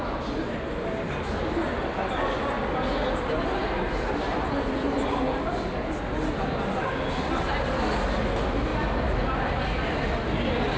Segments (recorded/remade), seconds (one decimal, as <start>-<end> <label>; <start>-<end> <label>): 0.0-10.8 recorded